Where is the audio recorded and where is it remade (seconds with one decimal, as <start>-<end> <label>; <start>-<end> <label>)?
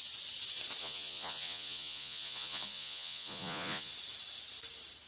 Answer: 0.0-0.8 recorded; 0.8-3.9 remade; 3.9-5.1 recorded